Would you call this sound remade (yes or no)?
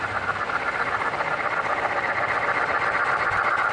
no